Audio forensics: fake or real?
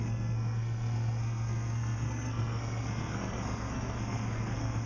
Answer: fake